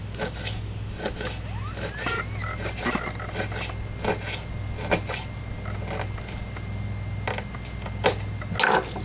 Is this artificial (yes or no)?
no